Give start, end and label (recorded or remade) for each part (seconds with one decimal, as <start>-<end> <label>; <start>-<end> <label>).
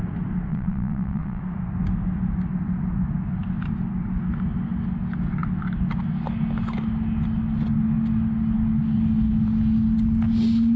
0.0-0.5 recorded; 0.5-1.4 remade; 1.4-10.8 recorded